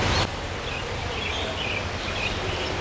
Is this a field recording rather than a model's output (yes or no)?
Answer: yes